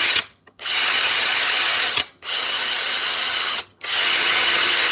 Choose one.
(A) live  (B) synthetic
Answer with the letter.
B